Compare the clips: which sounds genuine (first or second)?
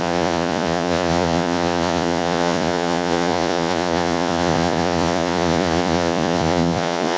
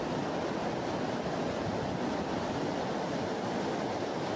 second